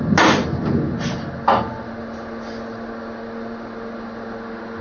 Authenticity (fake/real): real